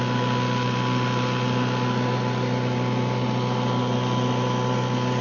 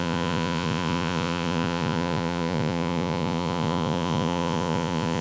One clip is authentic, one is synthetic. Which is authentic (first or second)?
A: first